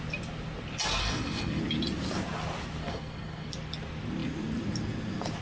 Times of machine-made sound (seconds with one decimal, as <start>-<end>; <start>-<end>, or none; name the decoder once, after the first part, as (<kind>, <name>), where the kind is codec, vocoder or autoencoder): 1.0-1.6 (codec, SNAC); 2.8-3.5